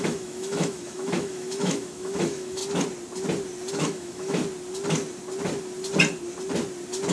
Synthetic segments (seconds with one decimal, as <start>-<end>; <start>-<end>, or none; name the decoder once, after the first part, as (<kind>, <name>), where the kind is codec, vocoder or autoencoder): 0.0-2.6 (autoencoder, DAC-VAE); 3.7-4.4